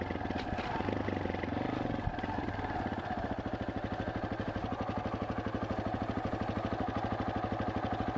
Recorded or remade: recorded